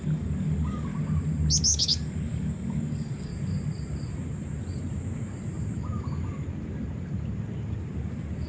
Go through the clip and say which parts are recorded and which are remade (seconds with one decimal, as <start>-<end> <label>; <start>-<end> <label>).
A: 0.0-0.9 remade; 0.9-1.6 recorded; 1.6-3.3 remade; 3.3-8.5 recorded